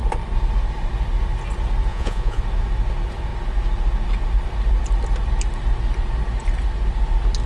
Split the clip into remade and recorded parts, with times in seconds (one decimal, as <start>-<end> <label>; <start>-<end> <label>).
0.0-1.9 recorded; 1.9-2.4 remade; 2.4-7.5 recorded

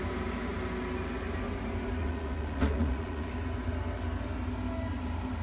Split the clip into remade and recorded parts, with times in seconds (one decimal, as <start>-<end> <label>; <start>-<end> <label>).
0.0-2.0 recorded; 2.0-3.3 remade; 3.3-5.4 recorded